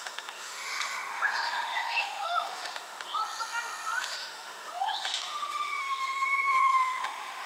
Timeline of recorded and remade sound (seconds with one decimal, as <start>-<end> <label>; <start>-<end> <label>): 0.0-3.2 remade; 3.2-4.0 recorded; 4.0-7.5 remade